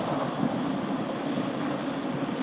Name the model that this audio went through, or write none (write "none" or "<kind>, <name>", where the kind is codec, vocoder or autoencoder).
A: none